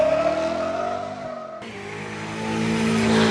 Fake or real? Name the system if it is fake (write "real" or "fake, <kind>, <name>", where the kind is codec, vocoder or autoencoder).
real